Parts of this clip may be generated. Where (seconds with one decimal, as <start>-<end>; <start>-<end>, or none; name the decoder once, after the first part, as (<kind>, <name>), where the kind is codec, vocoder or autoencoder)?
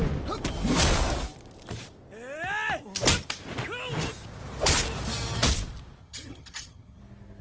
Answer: 6.0-7.0 (vocoder, HiFi-GAN)